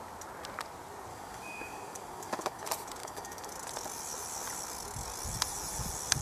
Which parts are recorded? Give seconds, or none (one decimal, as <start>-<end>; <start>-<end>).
0.0-1.1; 2.6-3.0; 3.5-6.2